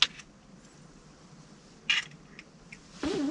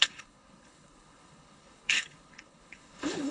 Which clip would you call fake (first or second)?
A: second